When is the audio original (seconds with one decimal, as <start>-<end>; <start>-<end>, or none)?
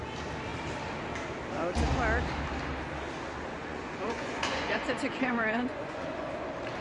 0.0-3.6; 6.3-6.8